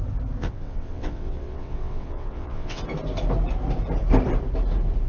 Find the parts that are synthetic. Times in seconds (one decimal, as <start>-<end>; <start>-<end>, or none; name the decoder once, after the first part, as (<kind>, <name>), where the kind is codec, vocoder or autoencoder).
0.4-2.8 (vocoder, WaveNeXt)

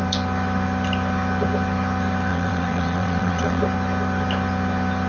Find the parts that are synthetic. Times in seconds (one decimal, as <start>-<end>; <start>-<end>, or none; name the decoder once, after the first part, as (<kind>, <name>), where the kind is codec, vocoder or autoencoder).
2.3-3.6 (vocoder, WaveNeXt)

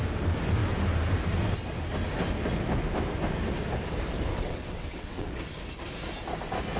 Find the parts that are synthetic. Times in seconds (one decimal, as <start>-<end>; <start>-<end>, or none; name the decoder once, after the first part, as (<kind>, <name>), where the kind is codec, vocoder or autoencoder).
4.3-5.4 (vocoder, WaveNeXt)

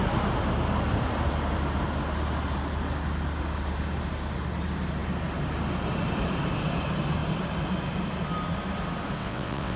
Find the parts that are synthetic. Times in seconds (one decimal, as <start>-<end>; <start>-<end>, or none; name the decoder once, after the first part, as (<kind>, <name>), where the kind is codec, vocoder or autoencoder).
9.2-9.8 (vocoder, WaveNeXt)

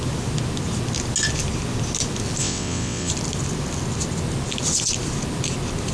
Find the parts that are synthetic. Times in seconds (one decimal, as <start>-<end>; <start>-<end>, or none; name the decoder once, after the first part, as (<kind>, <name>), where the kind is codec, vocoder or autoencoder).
2.4-3.1 (vocoder, WaveNeXt)

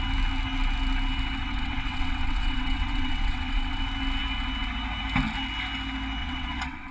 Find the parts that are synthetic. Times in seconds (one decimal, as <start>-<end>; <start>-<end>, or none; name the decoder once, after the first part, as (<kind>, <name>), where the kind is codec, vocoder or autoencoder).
1.4-3.8 (vocoder, WaveNeXt); 6.2-6.9

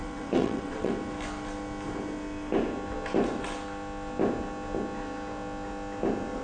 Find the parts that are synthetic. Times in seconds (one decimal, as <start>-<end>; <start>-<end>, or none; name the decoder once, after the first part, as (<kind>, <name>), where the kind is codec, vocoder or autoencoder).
0.0-0.9 (vocoder, WaveNeXt)